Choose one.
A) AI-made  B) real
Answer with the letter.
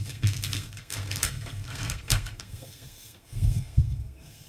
A